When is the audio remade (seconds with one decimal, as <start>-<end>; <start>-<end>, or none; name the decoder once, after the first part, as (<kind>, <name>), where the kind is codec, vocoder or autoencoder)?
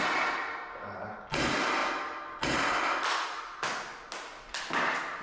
none